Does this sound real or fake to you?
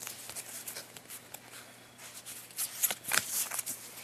real